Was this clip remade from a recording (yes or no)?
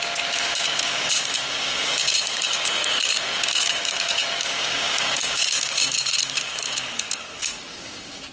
yes